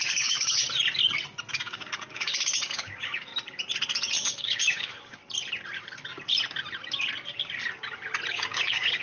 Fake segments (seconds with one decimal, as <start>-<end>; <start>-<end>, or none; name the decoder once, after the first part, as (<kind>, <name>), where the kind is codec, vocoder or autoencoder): 0.0-0.6 (codec, DAC); 1.5-3.3; 4.3-5.2; 8.3-9.0